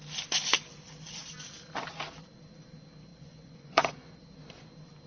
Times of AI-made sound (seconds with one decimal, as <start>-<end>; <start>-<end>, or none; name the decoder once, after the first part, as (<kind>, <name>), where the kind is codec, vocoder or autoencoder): 3.1-4.1 (vocoder, Vocos)